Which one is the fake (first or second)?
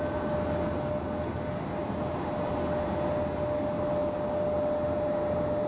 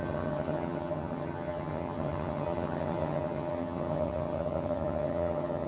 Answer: second